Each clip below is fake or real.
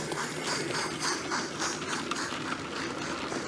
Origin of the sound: real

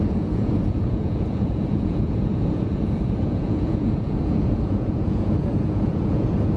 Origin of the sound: fake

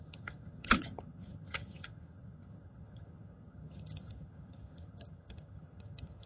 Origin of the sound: fake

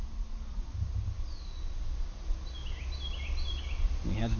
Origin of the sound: real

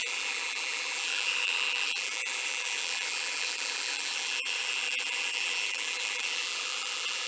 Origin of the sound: fake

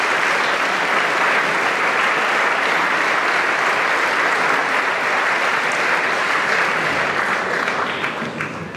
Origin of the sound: real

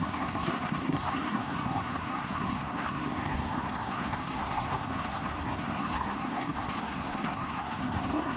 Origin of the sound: fake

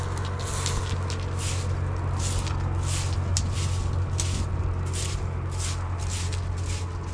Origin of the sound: real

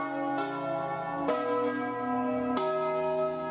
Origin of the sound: real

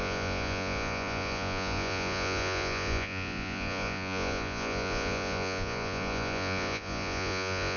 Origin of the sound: fake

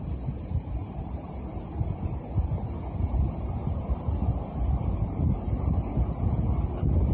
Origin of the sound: real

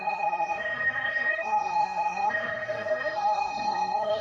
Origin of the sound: fake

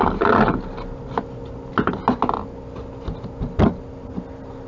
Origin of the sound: real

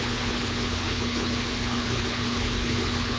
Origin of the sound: fake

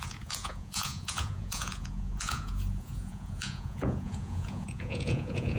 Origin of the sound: fake